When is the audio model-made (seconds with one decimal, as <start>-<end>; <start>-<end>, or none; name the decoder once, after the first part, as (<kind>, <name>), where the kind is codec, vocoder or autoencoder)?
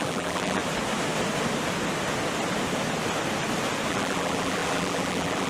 0.0-0.6 (vocoder, BigVGAN v2); 3.9-5.5